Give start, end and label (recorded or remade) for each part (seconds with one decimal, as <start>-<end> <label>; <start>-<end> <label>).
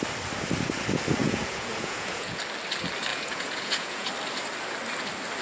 0.0-1.2 recorded; 1.2-2.4 remade; 2.4-3.1 recorded; 3.1-4.1 remade; 4.1-5.4 recorded